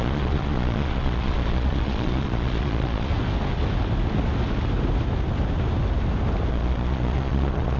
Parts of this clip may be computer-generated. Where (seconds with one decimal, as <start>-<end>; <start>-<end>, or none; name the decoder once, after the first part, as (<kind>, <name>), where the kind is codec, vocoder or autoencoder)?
0.0-3.1 (vocoder, Vocos); 6.5-7.8